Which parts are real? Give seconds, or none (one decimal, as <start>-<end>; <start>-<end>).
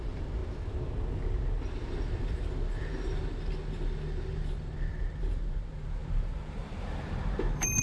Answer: 0.4-4.9